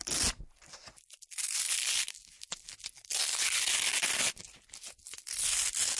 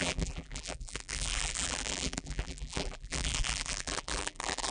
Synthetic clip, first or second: second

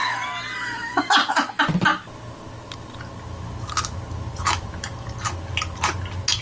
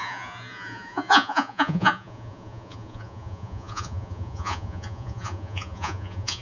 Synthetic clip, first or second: second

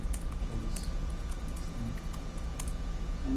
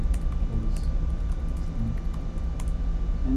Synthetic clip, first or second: first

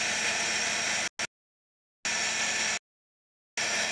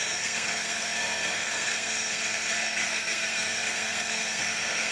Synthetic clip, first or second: second